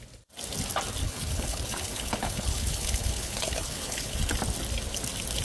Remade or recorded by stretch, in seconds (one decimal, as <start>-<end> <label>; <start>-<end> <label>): 0.0-1.0 recorded; 1.0-4.2 remade; 4.2-5.4 recorded